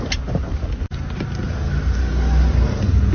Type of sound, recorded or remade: recorded